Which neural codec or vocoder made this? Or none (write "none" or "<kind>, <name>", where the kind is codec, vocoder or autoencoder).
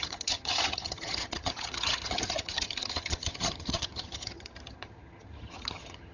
vocoder, HiFi-GAN